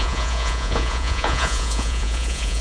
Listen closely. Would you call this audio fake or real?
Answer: fake